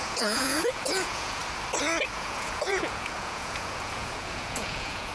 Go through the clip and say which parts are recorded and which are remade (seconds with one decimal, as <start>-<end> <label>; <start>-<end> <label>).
0.0-1.4 remade; 1.4-2.1 recorded; 2.1-5.1 remade